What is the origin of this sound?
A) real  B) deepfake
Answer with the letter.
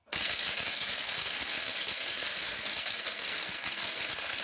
B